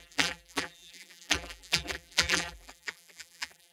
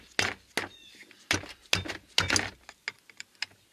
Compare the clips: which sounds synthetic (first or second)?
first